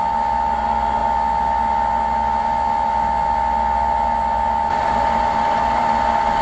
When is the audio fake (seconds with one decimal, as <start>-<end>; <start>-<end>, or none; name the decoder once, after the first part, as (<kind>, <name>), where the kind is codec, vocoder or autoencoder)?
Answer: none